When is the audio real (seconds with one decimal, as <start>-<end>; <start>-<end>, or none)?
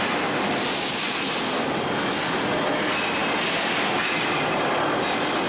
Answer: 0.0-5.5